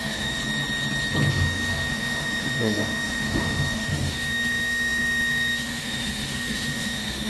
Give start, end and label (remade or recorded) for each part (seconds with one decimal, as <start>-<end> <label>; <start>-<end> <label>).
0.0-0.4 remade; 0.4-1.3 recorded; 1.3-7.3 remade